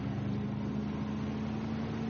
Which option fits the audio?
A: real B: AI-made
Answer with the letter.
A